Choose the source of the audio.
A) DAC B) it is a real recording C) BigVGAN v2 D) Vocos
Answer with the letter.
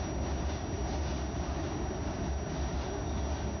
B